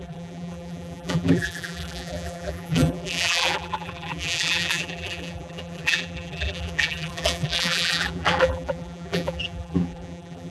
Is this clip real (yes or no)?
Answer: no